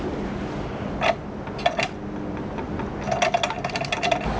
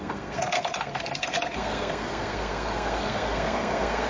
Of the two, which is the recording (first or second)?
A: first